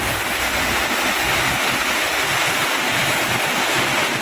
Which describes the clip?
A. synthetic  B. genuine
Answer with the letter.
B